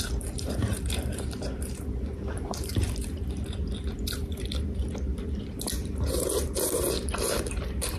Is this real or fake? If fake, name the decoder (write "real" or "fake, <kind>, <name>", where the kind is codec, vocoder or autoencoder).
fake, vocoder, BigVGAN v2